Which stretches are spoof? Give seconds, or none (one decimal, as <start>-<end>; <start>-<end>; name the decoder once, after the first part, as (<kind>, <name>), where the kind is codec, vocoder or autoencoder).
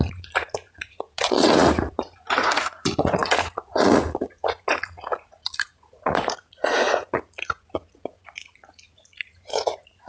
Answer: 0.0-10.1 (vocoder, Vocos)